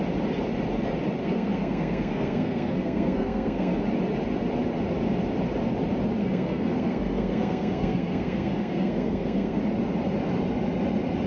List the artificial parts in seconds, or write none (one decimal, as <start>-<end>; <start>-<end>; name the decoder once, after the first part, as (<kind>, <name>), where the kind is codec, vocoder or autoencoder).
1.2-3.8 (codec, SNAC); 6.2-9.6